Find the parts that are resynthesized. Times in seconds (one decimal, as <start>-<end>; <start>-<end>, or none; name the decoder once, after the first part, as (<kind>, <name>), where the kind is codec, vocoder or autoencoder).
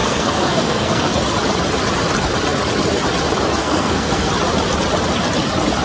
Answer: 0.0-1.1 (codec, SNAC); 3.6-4.3